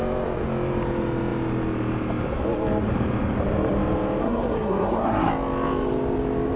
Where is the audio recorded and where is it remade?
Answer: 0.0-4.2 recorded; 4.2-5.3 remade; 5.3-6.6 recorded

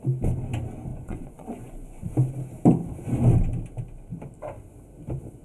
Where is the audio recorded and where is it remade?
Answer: 0.0-0.9 recorded; 0.9-2.0 remade; 2.0-5.4 recorded